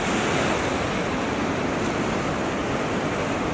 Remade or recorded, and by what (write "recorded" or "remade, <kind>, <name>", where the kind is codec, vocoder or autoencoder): recorded